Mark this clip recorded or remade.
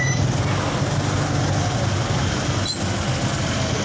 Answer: recorded